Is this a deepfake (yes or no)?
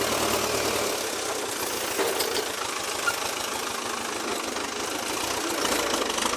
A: no